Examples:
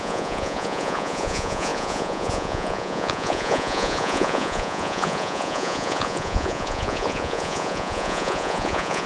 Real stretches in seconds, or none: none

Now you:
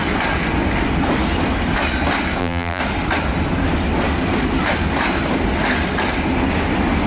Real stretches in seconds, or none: 0.0-2.4; 2.8-7.1

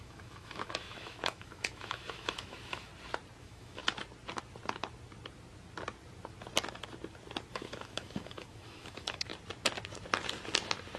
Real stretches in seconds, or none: 2.9-3.4; 3.8-7.5; 9.3-11.0

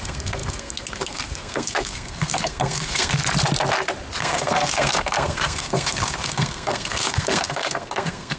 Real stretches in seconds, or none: 3.2-4.2

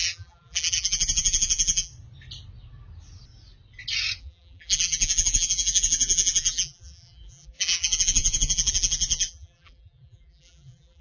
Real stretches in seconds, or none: 1.9-4.2

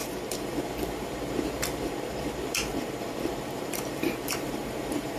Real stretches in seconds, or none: none

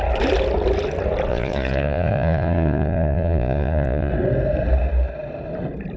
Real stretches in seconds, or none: 0.0-1.3; 4.1-6.0